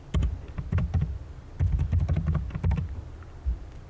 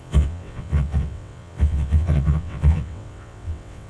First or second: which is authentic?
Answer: first